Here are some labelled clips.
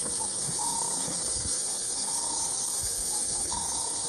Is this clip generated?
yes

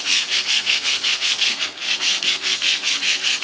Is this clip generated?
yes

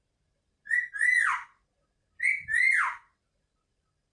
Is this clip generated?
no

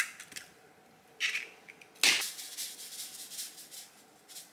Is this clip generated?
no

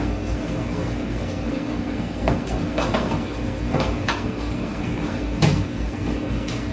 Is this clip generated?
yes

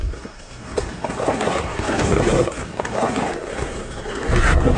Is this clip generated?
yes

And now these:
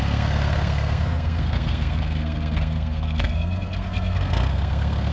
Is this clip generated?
yes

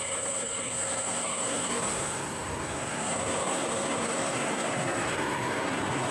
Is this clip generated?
yes